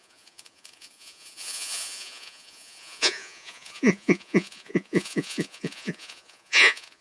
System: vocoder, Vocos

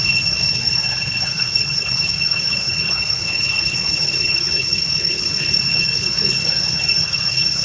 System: codec, HILCodec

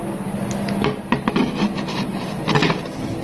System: none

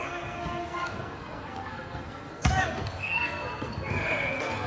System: codec, SNAC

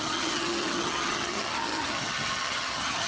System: vocoder, HiFi-GAN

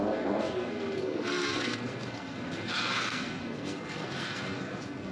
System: codec, SNAC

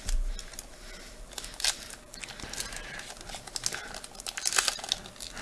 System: none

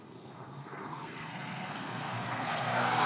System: codec, SNAC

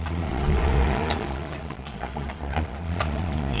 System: vocoder, Vocos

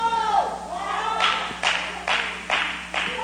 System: none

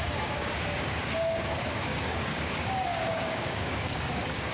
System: codec, DAC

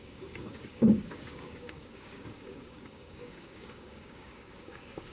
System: codec, DAC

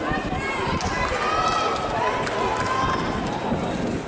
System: none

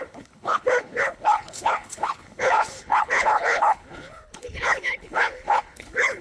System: codec, HILCodec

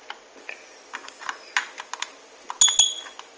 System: none